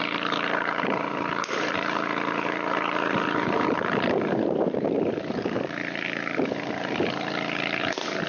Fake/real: fake